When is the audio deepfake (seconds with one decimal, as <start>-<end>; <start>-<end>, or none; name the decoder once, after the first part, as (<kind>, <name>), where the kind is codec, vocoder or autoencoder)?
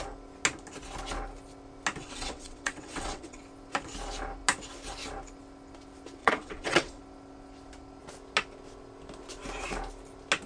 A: 2.0-3.4 (vocoder, WaveNeXt); 6.2-7.0